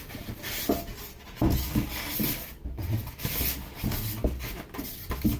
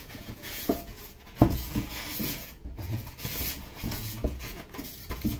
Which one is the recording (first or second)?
first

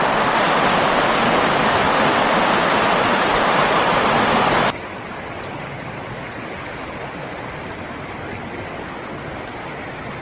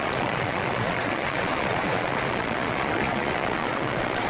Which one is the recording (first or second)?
first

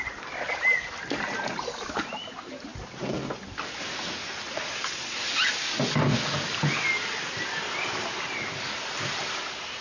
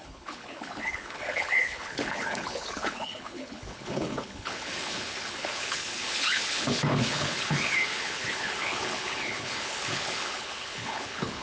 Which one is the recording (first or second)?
first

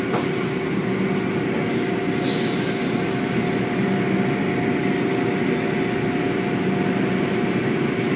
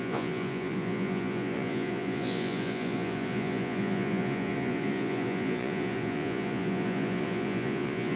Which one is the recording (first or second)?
first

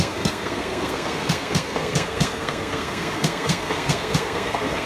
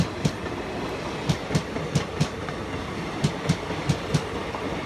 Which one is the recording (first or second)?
second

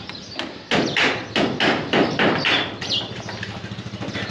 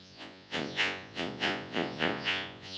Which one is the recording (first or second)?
first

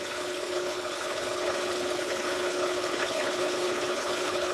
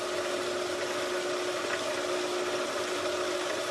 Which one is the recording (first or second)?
second